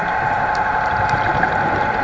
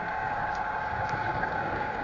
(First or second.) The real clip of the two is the first